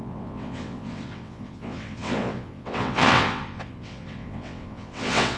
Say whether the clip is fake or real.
fake